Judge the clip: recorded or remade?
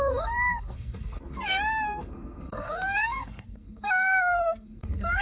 remade